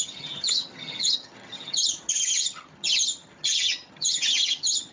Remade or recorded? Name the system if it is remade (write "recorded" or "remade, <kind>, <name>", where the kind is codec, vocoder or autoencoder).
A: remade, vocoder, HiFi-GAN